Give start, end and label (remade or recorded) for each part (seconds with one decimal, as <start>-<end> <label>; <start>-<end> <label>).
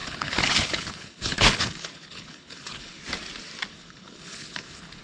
0.0-3.0 remade; 3.0-3.7 recorded; 3.7-5.0 remade